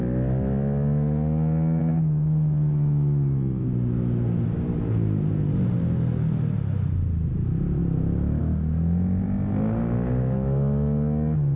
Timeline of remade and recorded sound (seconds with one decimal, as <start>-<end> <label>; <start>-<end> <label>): 0.0-11.6 recorded